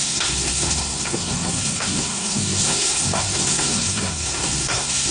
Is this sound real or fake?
fake